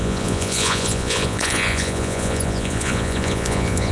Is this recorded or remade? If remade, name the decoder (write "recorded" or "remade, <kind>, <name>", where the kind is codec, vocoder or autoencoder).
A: remade, vocoder, Vocos